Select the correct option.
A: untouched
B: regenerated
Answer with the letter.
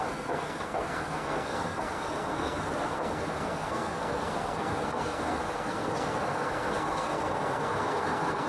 B